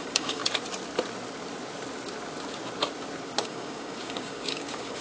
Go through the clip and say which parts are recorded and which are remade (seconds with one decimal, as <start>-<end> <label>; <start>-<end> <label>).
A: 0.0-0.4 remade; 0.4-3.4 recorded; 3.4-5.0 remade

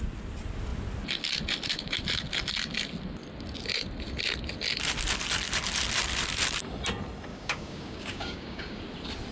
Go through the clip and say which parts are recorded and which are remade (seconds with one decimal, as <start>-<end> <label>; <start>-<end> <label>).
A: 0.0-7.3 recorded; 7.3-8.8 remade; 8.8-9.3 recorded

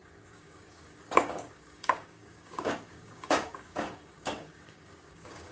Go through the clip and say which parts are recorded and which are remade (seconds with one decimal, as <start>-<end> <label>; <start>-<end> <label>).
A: 0.0-5.5 remade